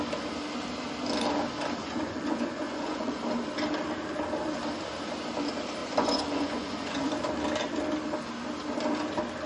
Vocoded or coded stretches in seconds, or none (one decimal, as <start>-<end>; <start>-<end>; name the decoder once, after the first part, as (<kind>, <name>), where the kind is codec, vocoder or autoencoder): 1.8-3.2 (vocoder, Vocos); 5.8-7.1